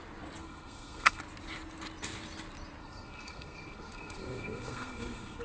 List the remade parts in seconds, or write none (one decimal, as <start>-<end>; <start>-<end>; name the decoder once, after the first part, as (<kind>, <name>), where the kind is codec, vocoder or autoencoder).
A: 0.4-1.2 (codec, SNAC); 2.8-5.4